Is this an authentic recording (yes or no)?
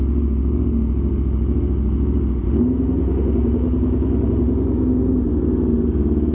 yes